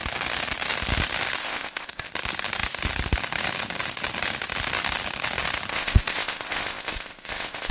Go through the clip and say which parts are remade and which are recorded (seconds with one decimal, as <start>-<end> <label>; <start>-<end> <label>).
0.0-1.4 recorded; 1.4-2.1 remade; 2.1-5.7 recorded; 5.7-7.7 remade